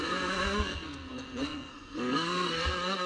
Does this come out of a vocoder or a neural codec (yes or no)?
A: yes